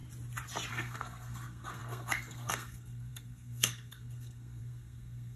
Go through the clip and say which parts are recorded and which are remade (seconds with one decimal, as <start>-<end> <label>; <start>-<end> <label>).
0.0-0.7 recorded; 0.7-5.4 remade